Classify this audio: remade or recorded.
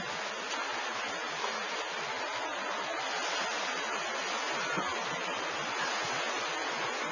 recorded